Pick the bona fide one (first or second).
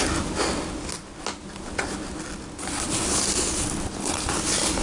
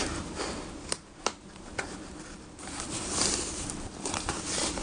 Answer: first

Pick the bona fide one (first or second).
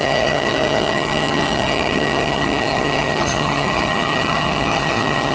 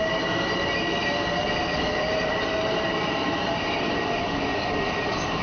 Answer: second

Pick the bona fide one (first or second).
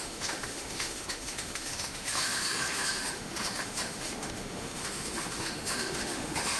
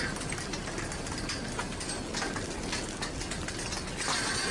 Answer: second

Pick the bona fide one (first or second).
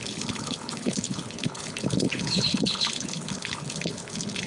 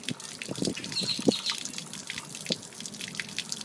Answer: second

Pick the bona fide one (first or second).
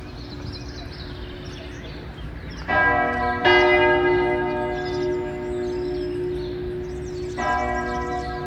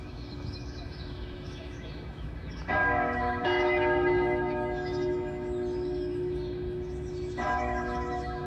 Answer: first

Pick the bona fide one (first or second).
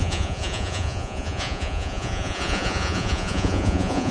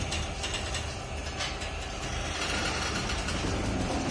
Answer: second